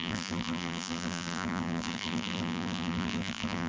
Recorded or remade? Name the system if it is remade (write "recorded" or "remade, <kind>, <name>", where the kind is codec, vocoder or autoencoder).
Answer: remade, vocoder, BigVGAN v2